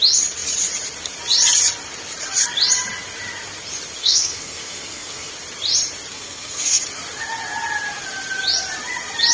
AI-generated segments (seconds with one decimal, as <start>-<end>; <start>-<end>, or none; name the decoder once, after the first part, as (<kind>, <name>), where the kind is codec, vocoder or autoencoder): 4.0-5.3 (codec, SNAC); 6.1-6.8